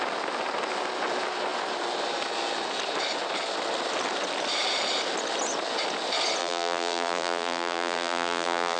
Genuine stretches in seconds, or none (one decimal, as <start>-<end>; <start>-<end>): 0.0-6.4